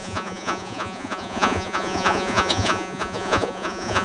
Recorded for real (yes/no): no